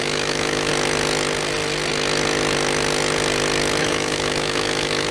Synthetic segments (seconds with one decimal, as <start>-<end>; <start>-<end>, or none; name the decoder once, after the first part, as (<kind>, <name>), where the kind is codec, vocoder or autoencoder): 0.0-0.7 (autoencoder, DAC-VAE); 3.8-5.1